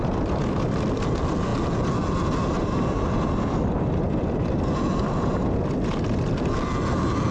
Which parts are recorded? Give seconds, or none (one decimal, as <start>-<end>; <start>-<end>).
0.0-7.3